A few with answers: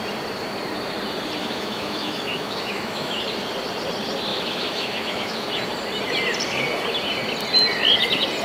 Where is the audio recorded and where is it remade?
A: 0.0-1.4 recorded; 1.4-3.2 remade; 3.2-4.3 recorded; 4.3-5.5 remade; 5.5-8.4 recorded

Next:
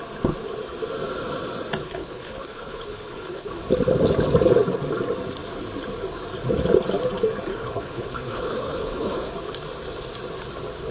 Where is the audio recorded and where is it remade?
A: 0.0-1.8 recorded; 1.8-3.5 remade; 3.5-7.5 recorded; 7.5-9.2 remade; 9.2-10.9 recorded

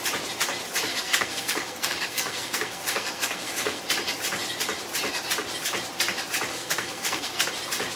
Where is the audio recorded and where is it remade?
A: 0.0-0.9 recorded; 0.9-3.8 remade; 3.8-6.5 recorded; 6.5-7.5 remade; 7.5-8.0 recorded

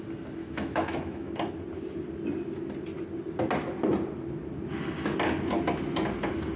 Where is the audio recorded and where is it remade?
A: 0.0-0.4 recorded; 0.4-1.3 remade; 1.3-6.6 recorded

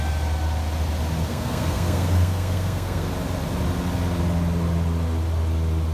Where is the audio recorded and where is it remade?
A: 0.0-1.3 recorded; 1.3-3.1 remade; 3.1-5.9 recorded

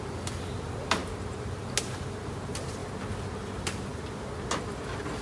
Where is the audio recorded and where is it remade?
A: 0.0-5.2 recorded

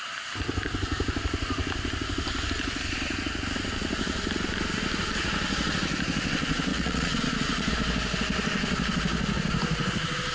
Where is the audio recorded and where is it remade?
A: 0.0-6.7 recorded; 6.7-7.7 remade; 7.7-10.3 recorded

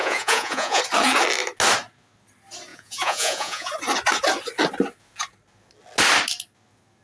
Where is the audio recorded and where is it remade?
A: 0.0-0.8 remade; 0.8-2.7 recorded; 2.7-3.7 remade; 3.7-7.0 recorded